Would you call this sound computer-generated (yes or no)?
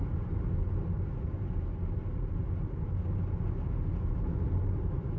no